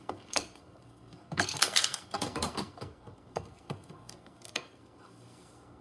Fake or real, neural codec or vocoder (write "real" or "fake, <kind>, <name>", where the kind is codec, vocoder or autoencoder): fake, codec, SNAC